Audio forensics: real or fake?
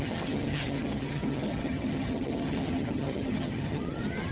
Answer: fake